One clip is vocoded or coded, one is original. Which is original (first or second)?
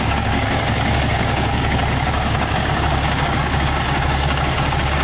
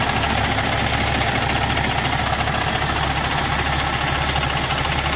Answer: second